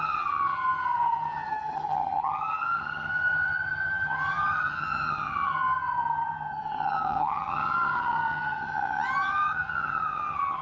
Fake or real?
fake